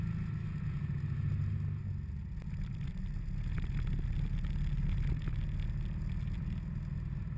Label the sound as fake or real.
real